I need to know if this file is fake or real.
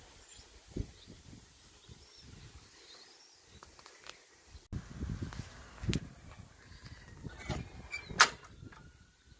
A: real